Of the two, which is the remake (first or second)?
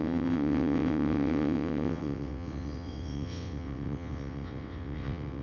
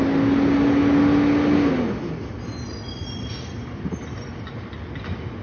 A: first